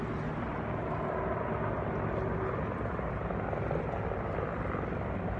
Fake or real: real